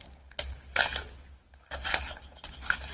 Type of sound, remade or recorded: recorded